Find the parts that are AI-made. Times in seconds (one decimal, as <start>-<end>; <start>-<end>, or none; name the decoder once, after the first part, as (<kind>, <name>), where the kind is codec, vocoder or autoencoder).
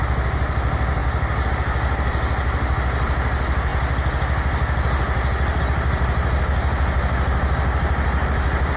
none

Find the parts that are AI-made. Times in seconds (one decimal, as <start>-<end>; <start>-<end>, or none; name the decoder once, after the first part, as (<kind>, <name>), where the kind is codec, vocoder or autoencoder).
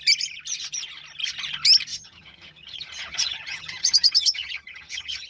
1.9-5.3 (vocoder, HiFi-GAN)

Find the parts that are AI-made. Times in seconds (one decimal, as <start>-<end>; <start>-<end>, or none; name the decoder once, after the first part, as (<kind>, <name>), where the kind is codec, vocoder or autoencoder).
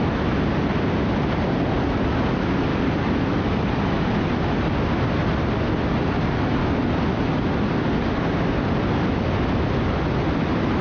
none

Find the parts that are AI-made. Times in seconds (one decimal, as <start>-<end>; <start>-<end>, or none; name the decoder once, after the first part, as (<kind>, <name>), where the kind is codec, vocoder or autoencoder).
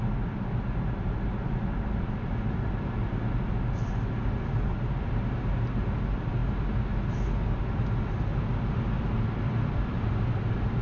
none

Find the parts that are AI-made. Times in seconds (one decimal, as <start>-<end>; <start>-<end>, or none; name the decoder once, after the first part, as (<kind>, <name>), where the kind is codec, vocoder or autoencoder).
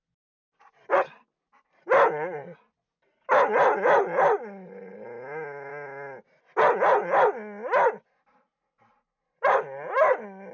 none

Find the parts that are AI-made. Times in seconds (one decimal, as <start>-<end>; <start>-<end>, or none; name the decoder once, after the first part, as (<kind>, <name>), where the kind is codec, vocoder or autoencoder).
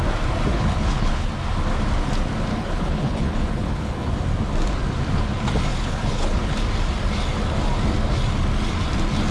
0.5-1.3 (codec, HILCodec); 2.5-4.1; 5.7-6.5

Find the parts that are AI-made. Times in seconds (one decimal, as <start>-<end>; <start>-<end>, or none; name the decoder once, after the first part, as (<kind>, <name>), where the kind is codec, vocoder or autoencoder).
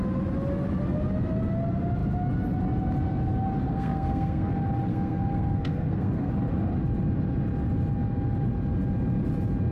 3.7-4.5 (codec, SNAC); 4.9-6.3